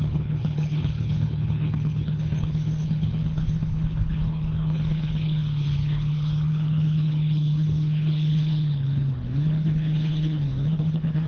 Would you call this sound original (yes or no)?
no